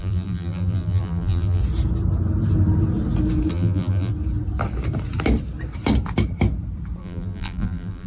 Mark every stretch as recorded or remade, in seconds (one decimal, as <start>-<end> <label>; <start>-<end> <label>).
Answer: 0.0-1.6 remade; 1.6-3.5 recorded; 3.5-4.1 remade; 4.1-7.0 recorded; 7.0-8.1 remade